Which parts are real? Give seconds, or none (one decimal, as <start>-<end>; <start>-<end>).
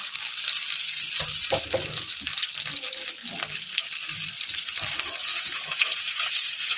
0.0-5.3